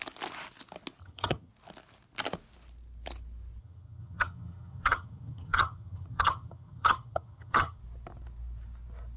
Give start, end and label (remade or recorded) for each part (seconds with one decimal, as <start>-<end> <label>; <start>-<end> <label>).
0.0-1.0 recorded; 1.0-1.5 remade; 1.5-3.6 recorded; 3.6-7.8 remade; 7.8-9.2 recorded